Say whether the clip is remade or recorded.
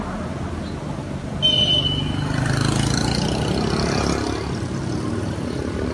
recorded